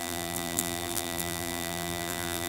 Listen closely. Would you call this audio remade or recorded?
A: remade